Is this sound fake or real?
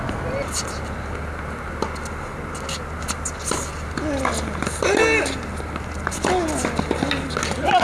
real